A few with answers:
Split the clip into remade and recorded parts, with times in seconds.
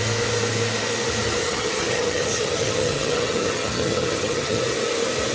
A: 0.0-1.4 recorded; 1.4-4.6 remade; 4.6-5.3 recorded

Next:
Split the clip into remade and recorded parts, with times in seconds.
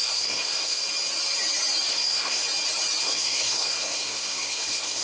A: 0.0-0.8 remade; 0.8-1.9 recorded; 1.9-2.4 remade; 2.4-3.0 recorded; 3.0-5.0 remade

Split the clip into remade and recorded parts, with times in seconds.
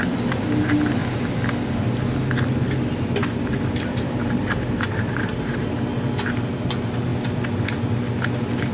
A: 0.0-3.2 recorded; 3.2-5.8 remade; 5.8-8.7 recorded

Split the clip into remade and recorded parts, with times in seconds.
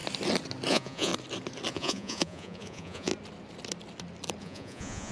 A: 0.0-0.7 recorded; 0.7-1.1 remade; 1.1-1.7 recorded; 1.7-3.1 remade; 3.1-4.4 recorded; 4.4-5.1 remade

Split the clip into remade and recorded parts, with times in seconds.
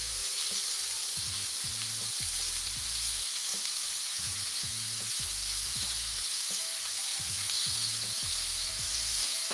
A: 0.0-0.4 remade; 0.4-2.8 recorded; 2.8-9.5 remade